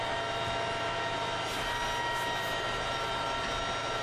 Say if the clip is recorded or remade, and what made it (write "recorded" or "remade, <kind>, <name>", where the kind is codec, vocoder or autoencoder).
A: recorded